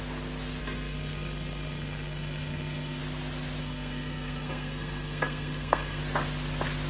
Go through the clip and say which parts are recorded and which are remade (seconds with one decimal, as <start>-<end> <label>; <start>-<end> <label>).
0.0-0.6 recorded; 0.6-3.0 remade; 3.0-3.6 recorded; 3.6-6.0 remade; 6.0-6.9 recorded